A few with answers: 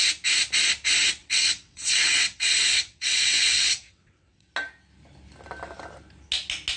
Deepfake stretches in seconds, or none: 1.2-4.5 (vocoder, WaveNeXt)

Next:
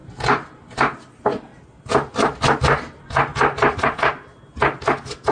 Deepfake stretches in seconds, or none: none

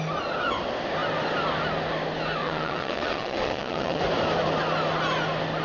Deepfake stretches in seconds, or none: 2.4-4.0 (vocoder, WaveNeXt)

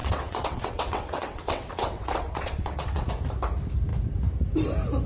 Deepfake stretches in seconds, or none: 0.0-3.1 (vocoder, WaveNeXt)

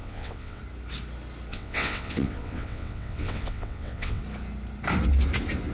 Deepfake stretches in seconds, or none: 0.0-0.6 (vocoder, WaveNeXt); 1.5-4.2